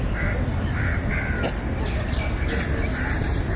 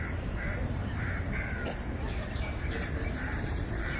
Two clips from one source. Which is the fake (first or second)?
second